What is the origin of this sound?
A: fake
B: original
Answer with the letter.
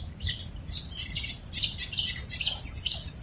B